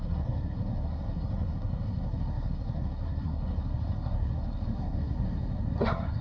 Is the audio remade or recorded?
remade